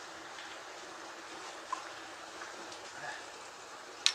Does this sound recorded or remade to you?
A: recorded